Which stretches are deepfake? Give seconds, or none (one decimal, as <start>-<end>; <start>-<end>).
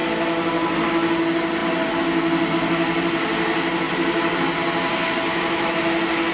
5.3-5.8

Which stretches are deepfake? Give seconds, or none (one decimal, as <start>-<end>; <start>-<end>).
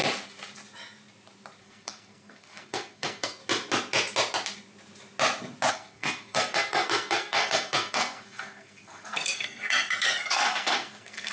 1.6-3.4; 5.7-11.3